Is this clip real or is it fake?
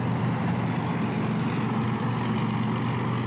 real